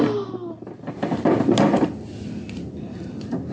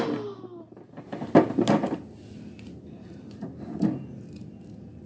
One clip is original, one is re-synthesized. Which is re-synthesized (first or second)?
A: first